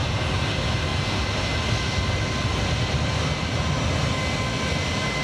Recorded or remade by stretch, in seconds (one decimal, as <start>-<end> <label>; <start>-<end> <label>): 0.0-5.2 recorded